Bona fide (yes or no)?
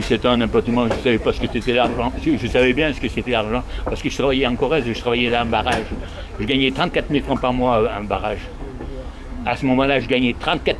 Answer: no